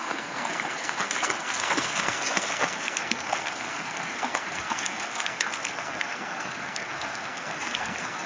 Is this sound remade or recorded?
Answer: remade